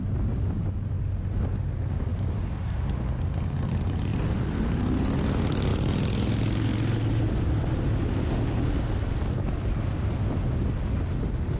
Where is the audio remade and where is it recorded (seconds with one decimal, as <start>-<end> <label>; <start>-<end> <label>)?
0.0-2.1 recorded; 2.1-2.7 remade; 2.7-4.1 recorded; 4.1-4.8 remade; 4.8-11.6 recorded

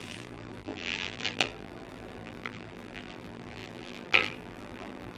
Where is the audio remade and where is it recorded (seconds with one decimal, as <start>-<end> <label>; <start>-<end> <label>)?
0.0-5.2 remade

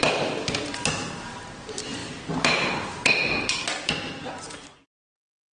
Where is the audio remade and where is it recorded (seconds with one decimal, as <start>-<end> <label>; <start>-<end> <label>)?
0.0-5.5 recorded

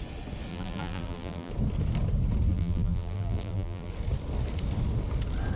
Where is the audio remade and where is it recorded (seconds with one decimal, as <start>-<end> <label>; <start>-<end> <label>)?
0.0-0.5 recorded; 0.5-1.5 remade; 1.5-2.5 recorded; 2.5-3.9 remade; 3.9-5.6 recorded